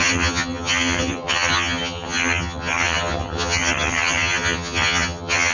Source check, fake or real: fake